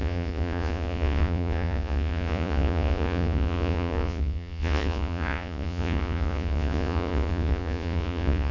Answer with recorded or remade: remade